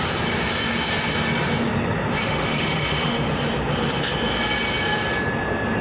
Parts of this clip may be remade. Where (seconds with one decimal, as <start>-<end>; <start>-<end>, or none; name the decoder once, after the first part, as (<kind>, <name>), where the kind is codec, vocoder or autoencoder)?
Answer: 2.2-3.3 (autoencoder, DAC-VAE)